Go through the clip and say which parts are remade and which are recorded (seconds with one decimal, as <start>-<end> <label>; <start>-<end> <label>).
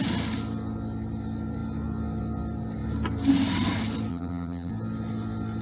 0.0-4.1 recorded; 4.1-4.7 remade; 4.7-5.6 recorded